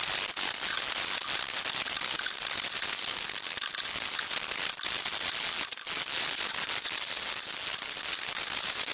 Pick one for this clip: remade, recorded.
recorded